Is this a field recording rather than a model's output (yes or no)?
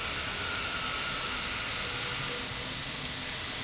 yes